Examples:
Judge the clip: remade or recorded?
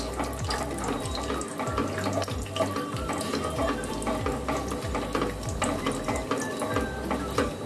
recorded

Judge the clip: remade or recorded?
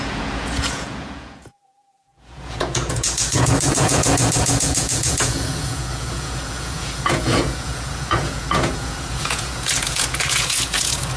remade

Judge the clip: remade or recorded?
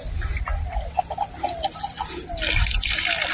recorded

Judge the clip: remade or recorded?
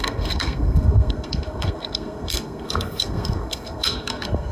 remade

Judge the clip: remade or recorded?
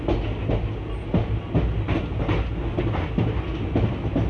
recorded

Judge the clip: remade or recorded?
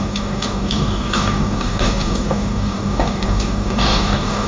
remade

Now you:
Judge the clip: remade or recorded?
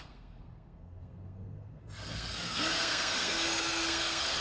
remade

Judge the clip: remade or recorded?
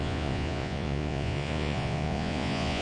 remade